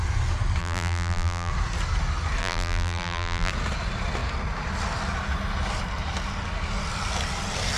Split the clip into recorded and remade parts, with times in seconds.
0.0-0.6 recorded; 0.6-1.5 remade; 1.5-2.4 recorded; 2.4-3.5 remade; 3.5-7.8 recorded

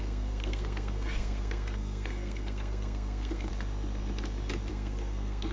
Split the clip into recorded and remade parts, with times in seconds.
0.0-3.5 remade; 3.5-4.7 recorded; 4.7-5.5 remade

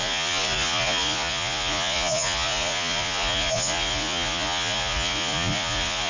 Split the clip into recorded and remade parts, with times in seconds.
0.0-6.1 remade

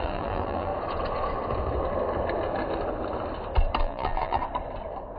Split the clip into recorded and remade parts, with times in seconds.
0.0-0.7 remade; 0.7-3.8 recorded; 3.8-4.4 remade; 4.4-5.2 recorded